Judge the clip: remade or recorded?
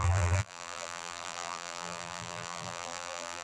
remade